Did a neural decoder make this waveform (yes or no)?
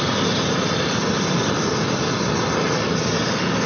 no